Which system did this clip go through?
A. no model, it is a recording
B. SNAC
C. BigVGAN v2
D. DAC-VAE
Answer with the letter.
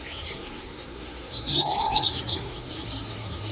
B